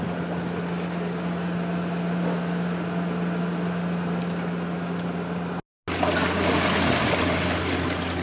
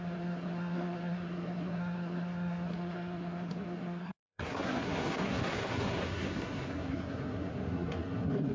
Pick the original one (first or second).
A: first